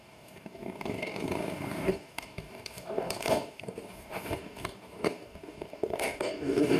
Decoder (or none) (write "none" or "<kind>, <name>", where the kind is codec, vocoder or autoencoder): codec, DAC